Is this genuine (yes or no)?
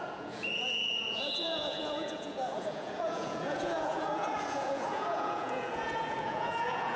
no